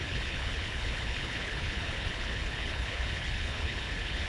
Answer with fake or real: fake